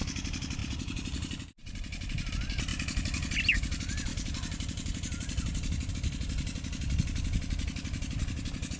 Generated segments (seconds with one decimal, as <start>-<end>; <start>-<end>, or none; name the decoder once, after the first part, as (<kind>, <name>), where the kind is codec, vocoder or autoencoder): 0.6-2.3 (vocoder, BigVGAN v2); 4.1-5.9